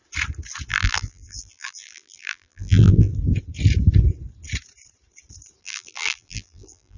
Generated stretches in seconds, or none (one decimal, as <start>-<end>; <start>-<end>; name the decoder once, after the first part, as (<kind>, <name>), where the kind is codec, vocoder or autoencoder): 0.7-3.1 (vocoder, BigVGAN v2); 5.6-7.0

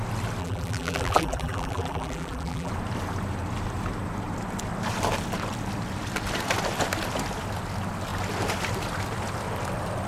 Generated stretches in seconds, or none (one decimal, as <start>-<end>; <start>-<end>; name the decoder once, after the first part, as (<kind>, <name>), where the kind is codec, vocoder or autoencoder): 0.4-2.7 (vocoder, BigVGAN v2)